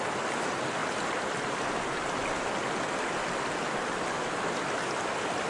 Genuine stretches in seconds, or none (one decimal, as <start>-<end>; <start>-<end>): 0.0-5.5